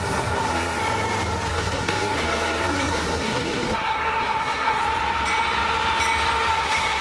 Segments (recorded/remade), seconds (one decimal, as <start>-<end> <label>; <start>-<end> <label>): 0.0-0.8 remade; 0.8-1.5 recorded; 1.5-4.8 remade; 4.8-6.5 recorded; 6.5-7.0 remade

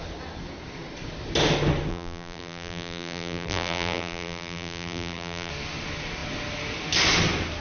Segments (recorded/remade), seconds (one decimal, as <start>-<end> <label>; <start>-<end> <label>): 0.0-1.9 recorded; 1.9-5.5 remade; 5.5-7.6 recorded

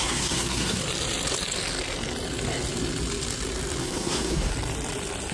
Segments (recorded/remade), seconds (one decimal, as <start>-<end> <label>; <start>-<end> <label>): 0.0-0.8 remade; 0.8-3.8 recorded; 3.8-4.5 remade; 4.5-5.3 recorded

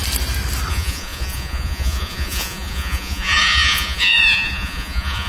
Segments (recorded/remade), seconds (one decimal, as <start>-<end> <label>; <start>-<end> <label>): 0.0-0.7 recorded; 0.7-5.3 remade